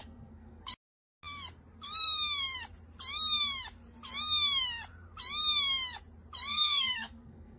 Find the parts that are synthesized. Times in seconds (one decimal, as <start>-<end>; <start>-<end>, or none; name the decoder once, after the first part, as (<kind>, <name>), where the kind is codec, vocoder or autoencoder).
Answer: 0.0-0.7 (codec, SNAC); 6.5-7.6